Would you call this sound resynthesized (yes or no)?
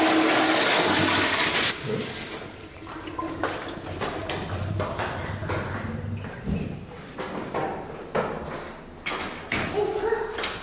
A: no